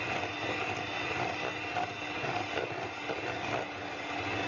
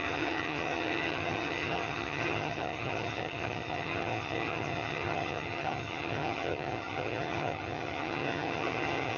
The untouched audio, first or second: first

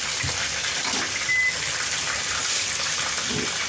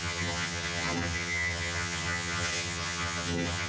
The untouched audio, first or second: first